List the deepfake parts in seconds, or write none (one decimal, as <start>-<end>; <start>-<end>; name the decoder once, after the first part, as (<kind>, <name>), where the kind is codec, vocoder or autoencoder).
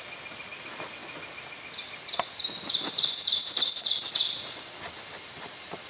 none